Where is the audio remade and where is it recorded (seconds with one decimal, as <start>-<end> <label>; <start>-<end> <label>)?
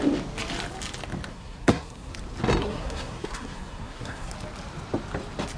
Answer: 0.0-1.3 recorded; 1.3-2.1 remade; 2.1-2.6 recorded; 2.6-4.3 remade; 4.3-5.6 recorded